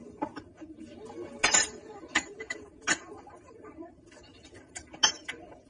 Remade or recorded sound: recorded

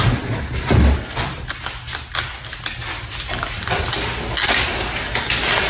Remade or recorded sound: recorded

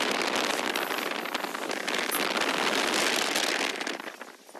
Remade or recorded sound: recorded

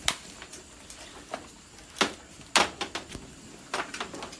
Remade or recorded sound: recorded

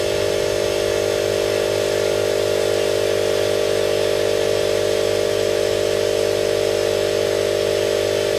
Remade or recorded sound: recorded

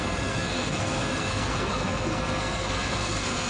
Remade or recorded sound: remade